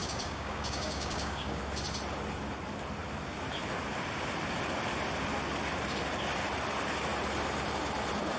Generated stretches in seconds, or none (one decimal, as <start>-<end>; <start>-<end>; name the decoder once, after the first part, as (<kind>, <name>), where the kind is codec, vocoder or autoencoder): 0.0-1.6 (codec, DAC)